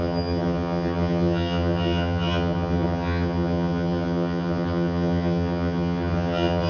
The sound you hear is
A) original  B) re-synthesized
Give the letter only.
B